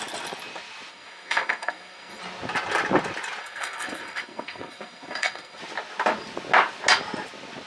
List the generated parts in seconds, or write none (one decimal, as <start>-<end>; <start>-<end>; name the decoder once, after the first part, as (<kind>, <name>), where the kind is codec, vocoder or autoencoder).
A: 0.9-2.2 (codec, SNAC); 3.4-5.6